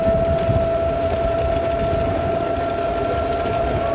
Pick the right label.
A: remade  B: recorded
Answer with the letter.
B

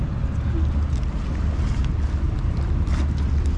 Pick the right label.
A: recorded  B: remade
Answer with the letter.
A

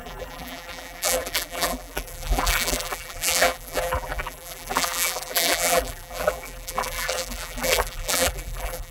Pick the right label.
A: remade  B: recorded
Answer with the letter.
A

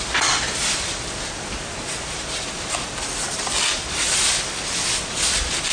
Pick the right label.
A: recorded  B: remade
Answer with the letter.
A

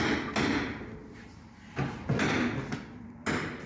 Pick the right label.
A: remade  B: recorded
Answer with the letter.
B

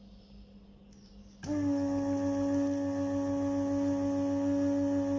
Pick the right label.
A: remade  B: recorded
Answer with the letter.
B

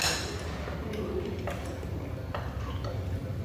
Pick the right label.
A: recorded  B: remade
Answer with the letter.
A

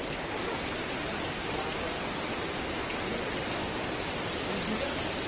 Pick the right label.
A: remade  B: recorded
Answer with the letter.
B